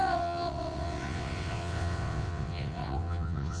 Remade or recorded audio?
remade